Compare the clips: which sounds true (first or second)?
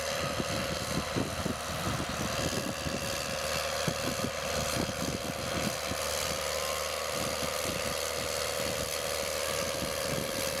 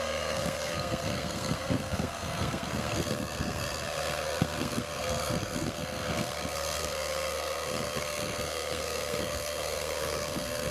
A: first